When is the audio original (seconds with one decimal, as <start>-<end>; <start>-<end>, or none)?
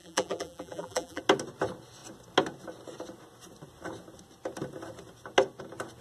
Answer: 1.2-6.0